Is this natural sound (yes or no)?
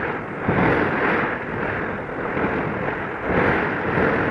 yes